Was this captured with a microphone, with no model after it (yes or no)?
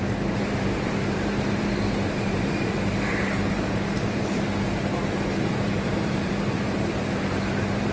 no